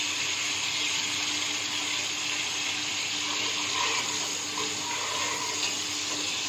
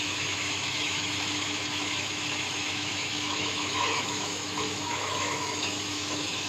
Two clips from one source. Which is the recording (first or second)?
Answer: first